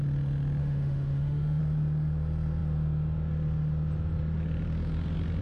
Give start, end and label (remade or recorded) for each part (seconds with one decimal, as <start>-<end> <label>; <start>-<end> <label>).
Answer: 0.0-0.6 recorded; 0.6-1.6 remade; 1.6-5.4 recorded